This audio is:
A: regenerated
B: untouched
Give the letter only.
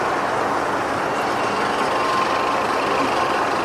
B